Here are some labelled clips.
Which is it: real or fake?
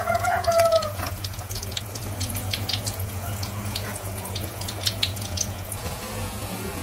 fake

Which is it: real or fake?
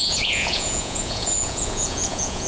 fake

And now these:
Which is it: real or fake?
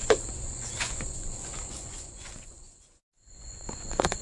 fake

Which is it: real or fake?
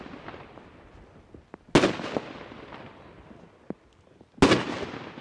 real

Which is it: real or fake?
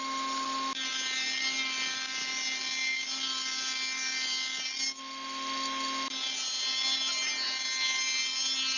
real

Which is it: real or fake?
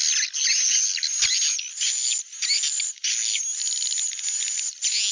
real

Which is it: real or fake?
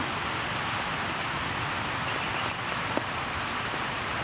real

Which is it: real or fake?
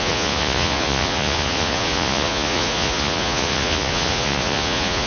fake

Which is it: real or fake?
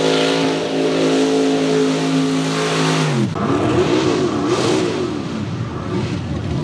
real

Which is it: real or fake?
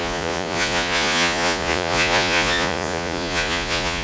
fake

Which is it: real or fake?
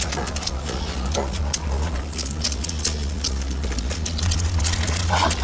fake